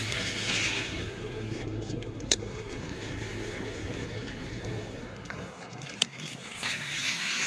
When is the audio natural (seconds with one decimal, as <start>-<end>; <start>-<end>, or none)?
none